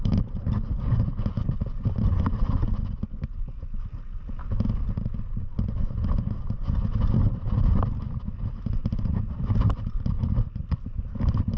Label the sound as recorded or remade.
recorded